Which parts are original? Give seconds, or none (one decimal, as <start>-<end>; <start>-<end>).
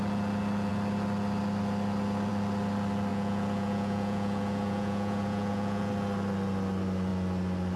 0.0-3.1; 5.9-7.8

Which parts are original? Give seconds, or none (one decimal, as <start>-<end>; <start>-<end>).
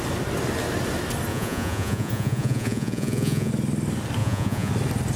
0.0-1.3; 3.5-4.2; 4.7-5.2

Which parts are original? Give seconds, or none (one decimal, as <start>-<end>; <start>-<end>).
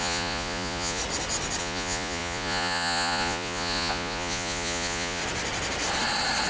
1.0-1.6; 5.2-6.5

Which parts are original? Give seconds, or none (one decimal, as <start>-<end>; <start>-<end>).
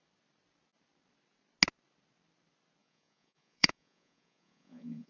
0.0-2.8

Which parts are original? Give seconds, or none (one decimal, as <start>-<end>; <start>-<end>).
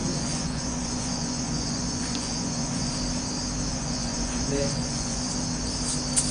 2.9-3.7; 5.3-6.3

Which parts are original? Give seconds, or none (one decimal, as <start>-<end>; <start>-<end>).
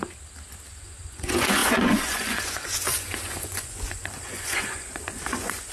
0.0-0.7